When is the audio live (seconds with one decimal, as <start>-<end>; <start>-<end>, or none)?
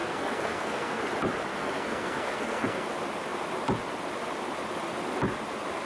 1.0-1.5; 2.9-5.9